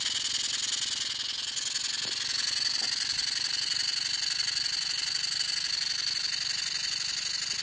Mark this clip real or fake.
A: real